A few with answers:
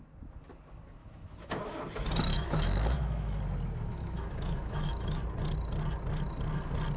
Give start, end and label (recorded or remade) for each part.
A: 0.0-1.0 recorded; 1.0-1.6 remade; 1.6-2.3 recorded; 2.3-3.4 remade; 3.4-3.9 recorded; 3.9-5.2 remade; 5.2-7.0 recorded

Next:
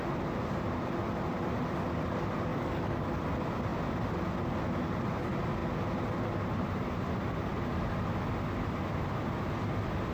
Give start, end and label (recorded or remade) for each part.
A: 0.0-2.5 recorded; 2.5-3.2 remade; 3.2-10.1 recorded

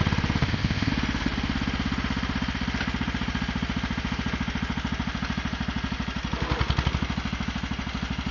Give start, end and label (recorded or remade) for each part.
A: 0.0-0.4 recorded; 0.4-0.9 remade; 0.9-8.3 recorded

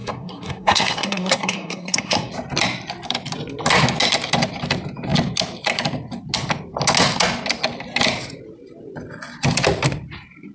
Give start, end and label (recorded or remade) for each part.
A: 0.0-2.3 remade; 2.3-10.5 recorded

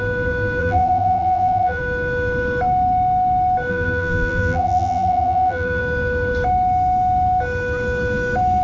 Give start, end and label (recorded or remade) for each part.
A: 0.0-0.6 recorded; 0.6-1.8 remade; 1.8-3.7 recorded; 3.7-5.8 remade; 5.8-8.6 recorded

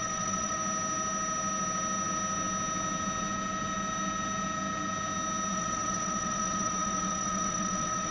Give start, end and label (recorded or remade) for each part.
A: 0.0-0.6 remade; 0.6-5.5 recorded; 5.5-8.1 remade

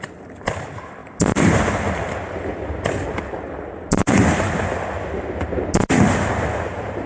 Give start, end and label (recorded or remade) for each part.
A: 0.0-7.1 recorded